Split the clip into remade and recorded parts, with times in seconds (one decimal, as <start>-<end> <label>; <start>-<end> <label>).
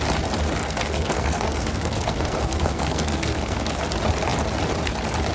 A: 0.0-0.6 recorded; 0.6-3.8 remade; 3.8-5.3 recorded